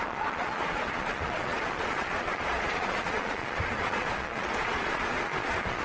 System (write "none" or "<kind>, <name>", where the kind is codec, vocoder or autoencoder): vocoder, Vocos